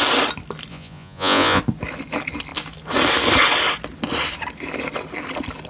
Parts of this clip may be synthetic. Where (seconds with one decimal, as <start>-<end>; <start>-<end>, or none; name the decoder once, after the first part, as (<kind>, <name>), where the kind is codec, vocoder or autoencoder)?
0.7-1.6 (vocoder, Vocos)